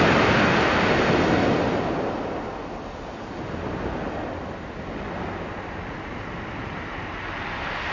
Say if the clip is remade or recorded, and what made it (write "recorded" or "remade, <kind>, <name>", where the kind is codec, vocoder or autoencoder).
recorded